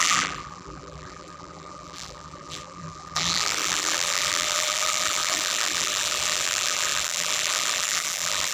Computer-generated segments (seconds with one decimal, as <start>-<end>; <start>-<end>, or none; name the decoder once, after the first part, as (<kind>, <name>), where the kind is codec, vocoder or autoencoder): 0.0-8.5 (vocoder, BigVGAN v2)